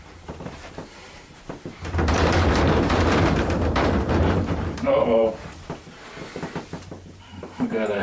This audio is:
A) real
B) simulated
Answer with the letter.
B